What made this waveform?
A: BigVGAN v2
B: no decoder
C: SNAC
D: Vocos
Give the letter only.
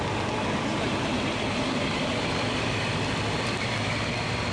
B